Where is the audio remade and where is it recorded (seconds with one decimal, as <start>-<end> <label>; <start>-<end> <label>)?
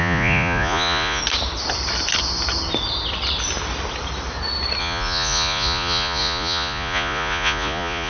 0.0-1.2 remade; 1.2-4.8 recorded; 4.8-8.1 remade